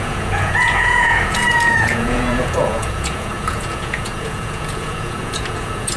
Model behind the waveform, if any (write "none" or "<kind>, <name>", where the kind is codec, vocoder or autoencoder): vocoder, Vocos